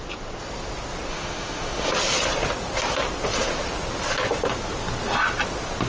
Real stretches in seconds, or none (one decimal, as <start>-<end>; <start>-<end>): 0.0-1.1; 1.9-5.9